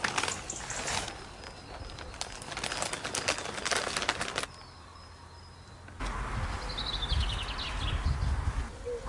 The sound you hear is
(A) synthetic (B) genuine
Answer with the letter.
B